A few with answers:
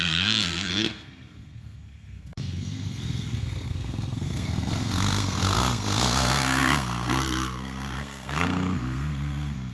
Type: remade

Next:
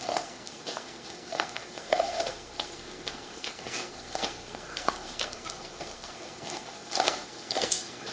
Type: remade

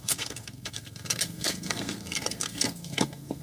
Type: remade